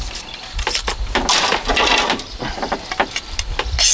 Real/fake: real